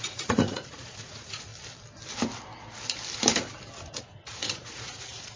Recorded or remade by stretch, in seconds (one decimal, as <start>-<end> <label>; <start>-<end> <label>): 0.0-1.5 remade; 1.5-3.9 recorded; 3.9-5.4 remade